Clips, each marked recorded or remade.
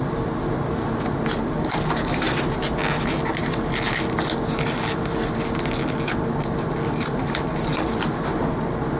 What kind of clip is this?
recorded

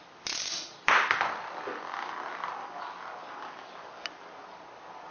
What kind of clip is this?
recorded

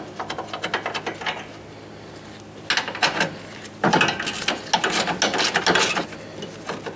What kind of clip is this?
recorded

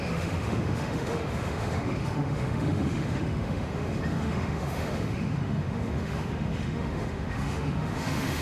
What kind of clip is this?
remade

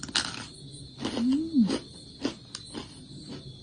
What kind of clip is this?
recorded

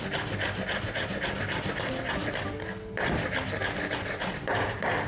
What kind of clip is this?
recorded